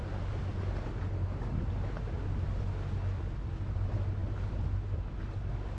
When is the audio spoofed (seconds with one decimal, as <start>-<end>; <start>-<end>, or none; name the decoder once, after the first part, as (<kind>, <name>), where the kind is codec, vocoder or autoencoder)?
none

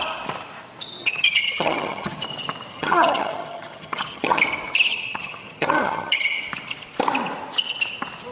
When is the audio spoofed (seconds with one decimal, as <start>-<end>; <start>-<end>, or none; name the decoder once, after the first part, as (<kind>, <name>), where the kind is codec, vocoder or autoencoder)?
1.0-2.2 (vocoder, HiFi-GAN); 2.7-4.4; 4.9-6.4

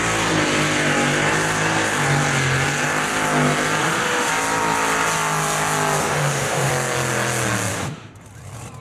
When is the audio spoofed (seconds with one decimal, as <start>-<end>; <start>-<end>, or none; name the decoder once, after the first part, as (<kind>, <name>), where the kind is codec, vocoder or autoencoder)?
3.8-4.3 (autoencoder, DAC-VAE); 6.0-6.7; 7.7-8.2

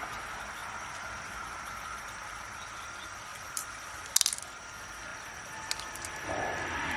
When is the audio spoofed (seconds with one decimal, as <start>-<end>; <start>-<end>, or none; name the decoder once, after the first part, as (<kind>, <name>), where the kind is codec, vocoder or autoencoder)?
0.6-2.4 (vocoder, BigVGAN v2); 3.3-4.1

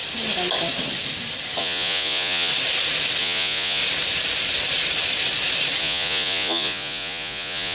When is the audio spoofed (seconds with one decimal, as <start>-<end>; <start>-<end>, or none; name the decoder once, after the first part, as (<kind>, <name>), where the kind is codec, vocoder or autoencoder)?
1.6-2.5 (vocoder, Vocos); 3.2-3.8; 5.8-7.7

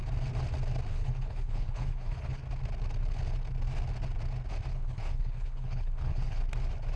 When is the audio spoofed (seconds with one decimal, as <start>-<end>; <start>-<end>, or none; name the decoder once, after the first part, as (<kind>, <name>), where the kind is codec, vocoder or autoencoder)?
0.9-2.4 (codec, HILCodec); 4.7-6.4

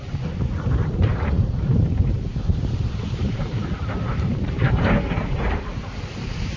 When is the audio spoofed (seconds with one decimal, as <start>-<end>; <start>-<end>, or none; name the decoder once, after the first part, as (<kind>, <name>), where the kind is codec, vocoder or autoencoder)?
0.0-6.6 (vocoder, BigVGAN v2)

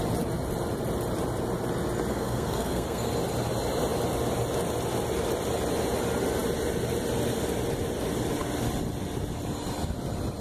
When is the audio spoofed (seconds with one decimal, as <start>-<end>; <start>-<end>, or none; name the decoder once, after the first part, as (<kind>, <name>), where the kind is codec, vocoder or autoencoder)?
2.1-3.1 (codec, SNAC)